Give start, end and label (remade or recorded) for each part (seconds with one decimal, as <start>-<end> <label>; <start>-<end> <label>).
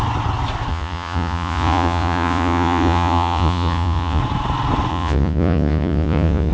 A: 0.0-0.7 recorded; 0.7-4.2 remade; 4.2-4.9 recorded; 4.9-6.5 remade